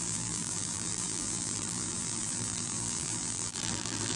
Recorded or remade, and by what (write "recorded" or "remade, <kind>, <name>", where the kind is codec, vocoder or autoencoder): remade, vocoder, BigVGAN v2